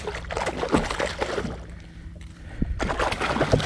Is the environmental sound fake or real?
real